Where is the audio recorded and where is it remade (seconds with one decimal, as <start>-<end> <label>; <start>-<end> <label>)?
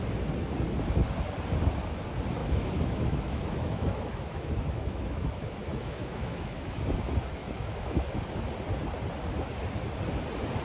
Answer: 0.0-2.4 recorded; 2.4-6.7 remade; 6.7-7.4 recorded; 7.4-8.2 remade; 8.2-10.6 recorded